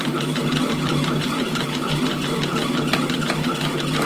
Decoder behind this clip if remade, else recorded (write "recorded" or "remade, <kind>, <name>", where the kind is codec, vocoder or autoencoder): remade, vocoder, BigVGAN v2